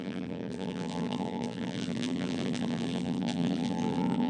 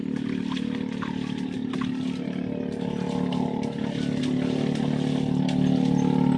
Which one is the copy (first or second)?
first